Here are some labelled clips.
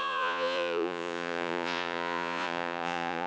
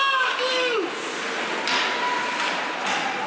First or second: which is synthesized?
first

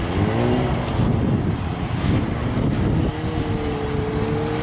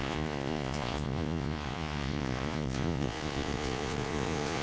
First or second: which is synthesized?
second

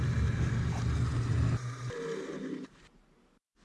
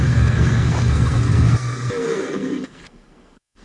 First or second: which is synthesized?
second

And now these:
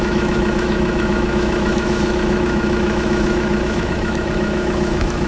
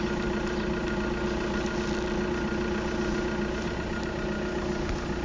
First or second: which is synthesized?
first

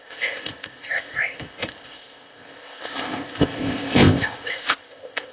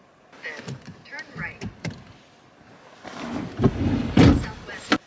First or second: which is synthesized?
first